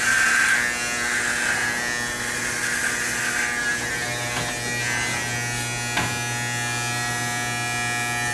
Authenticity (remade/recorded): recorded